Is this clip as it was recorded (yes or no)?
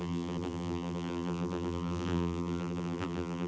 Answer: no